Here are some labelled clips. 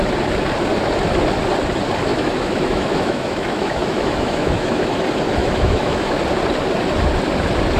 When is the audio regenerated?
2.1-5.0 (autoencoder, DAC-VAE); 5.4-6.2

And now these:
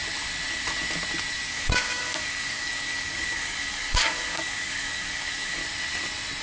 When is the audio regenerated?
1.5-5.6 (codec, DAC)

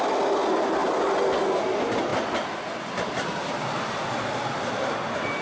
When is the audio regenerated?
none

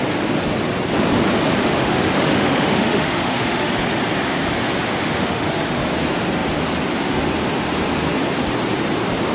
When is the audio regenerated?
1.6-3.7 (autoencoder, DAC-VAE); 5.0-5.8